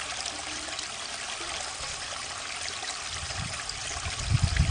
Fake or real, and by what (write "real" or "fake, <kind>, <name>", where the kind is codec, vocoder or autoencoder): real